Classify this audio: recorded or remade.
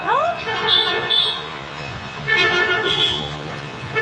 remade